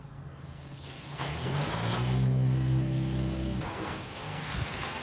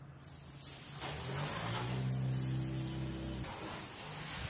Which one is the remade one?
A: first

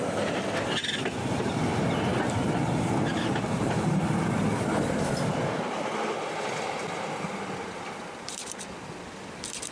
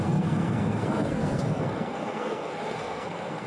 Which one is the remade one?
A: second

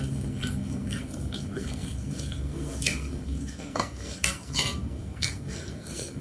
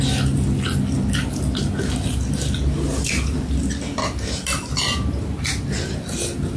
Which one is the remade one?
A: first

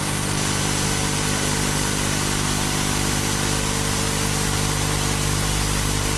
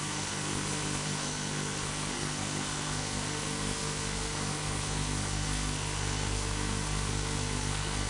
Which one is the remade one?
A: second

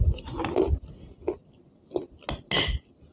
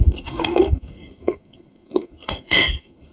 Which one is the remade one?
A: second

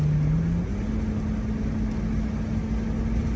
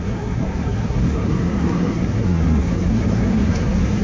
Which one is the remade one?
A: second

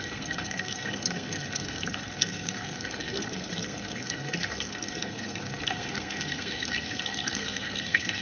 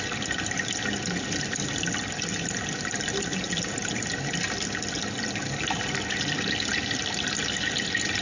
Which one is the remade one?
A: first